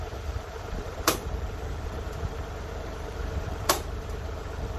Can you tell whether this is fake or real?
fake